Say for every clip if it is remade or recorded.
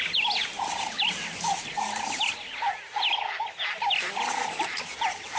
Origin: recorded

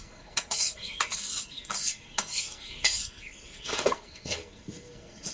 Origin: remade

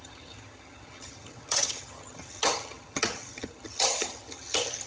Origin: remade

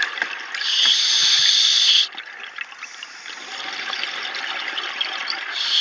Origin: recorded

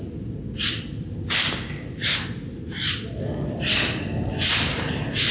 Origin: recorded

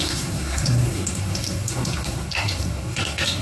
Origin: remade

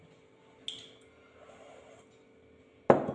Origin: recorded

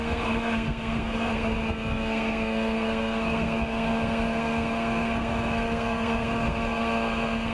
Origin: remade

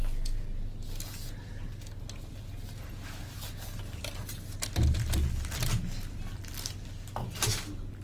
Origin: recorded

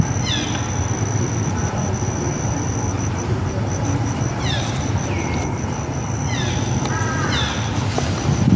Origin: recorded